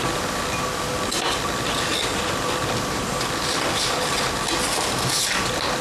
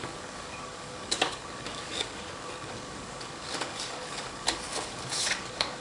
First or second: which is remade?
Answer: second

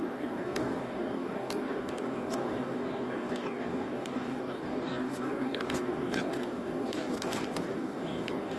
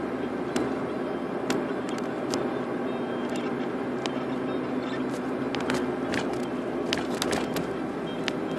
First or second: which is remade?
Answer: first